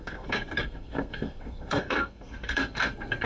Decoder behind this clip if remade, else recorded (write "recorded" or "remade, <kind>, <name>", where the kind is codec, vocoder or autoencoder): remade, codec, SNAC